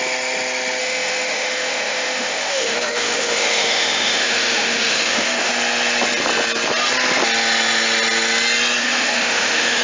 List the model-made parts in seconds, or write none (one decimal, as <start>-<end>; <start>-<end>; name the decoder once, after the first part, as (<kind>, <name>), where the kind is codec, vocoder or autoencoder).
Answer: 0.8-5.5 (autoencoder, DAC-VAE); 8.8-9.8